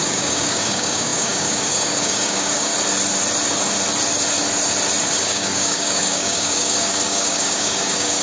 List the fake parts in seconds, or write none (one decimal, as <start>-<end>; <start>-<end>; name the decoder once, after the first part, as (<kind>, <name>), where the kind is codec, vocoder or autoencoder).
0.0-2.7 (codec, DAC); 5.2-8.2